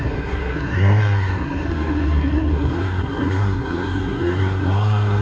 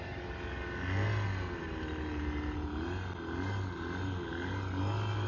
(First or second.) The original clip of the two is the second